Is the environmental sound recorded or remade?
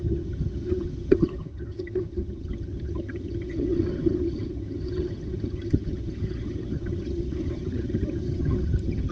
remade